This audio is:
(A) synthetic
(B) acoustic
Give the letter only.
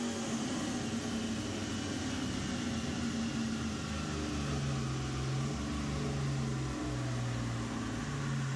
B